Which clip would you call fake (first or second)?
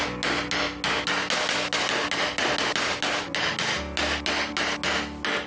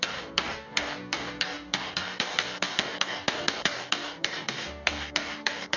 second